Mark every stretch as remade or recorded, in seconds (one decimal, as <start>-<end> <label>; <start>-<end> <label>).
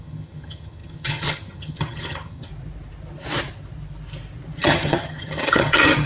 0.0-2.5 remade; 2.5-4.6 recorded; 4.6-6.1 remade